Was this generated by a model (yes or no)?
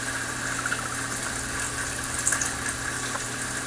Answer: yes